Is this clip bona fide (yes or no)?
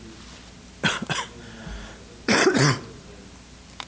yes